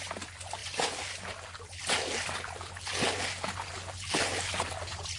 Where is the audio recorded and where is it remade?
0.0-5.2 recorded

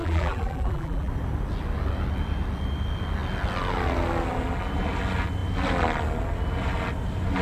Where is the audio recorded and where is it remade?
0.0-1.1 remade; 1.1-7.4 recorded

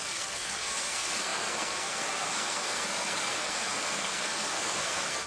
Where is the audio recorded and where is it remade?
0.0-5.3 remade

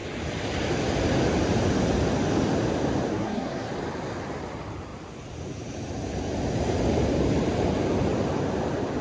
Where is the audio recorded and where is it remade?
0.0-3.1 recorded; 3.1-3.7 remade; 3.7-9.0 recorded

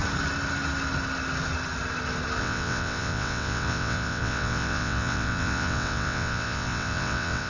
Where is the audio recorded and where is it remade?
0.0-2.4 recorded; 2.4-7.5 remade

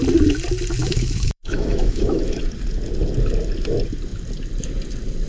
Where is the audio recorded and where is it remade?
0.0-0.8 recorded; 0.8-2.4 remade; 2.4-5.3 recorded

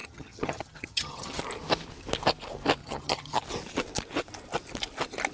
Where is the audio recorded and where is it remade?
0.0-1.4 remade; 1.4-2.8 recorded; 2.8-3.4 remade; 3.4-5.3 recorded

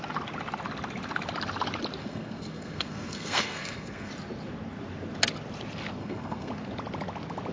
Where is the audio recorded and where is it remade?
0.0-2.0 recorded; 2.0-4.1 remade; 4.1-6.0 recorded; 6.0-6.5 remade; 6.5-7.5 recorded